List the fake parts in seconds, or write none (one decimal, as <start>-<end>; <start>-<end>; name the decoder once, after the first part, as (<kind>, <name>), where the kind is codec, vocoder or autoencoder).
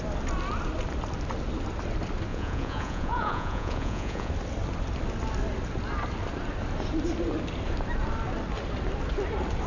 2.3-4.3 (vocoder, Vocos)